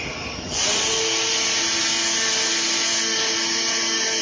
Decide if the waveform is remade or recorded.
recorded